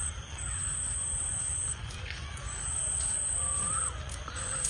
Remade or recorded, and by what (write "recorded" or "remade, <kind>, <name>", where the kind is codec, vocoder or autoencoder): remade, vocoder, Vocos